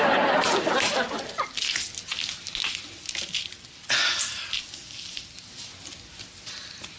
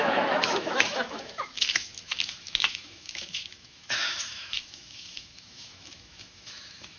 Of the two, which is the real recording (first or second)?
first